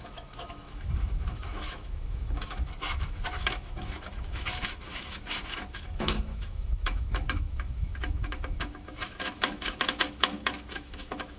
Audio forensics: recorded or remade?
remade